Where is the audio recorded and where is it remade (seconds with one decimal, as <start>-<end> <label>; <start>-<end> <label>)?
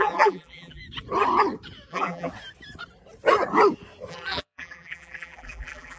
0.0-0.8 remade; 0.8-1.9 recorded; 1.9-2.3 remade; 2.3-4.1 recorded; 4.1-6.0 remade